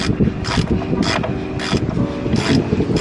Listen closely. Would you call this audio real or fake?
real